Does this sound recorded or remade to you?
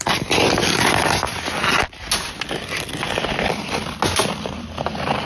recorded